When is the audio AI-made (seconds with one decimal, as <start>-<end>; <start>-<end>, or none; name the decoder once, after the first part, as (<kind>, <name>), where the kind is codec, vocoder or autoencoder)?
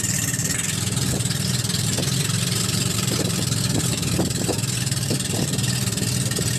0.0-6.6 (vocoder, BigVGAN v2)